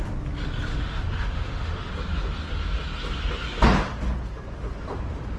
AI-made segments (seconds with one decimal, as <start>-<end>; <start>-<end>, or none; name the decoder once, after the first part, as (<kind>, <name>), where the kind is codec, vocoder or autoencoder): 0.7-1.9 (autoencoder, DAC-VAE)